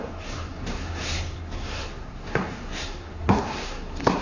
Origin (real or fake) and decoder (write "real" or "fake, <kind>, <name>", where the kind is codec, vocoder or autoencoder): fake, codec, SNAC